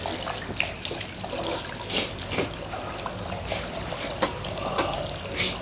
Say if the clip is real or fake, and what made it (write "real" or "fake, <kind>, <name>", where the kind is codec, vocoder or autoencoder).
real